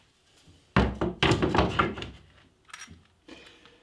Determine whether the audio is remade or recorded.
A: recorded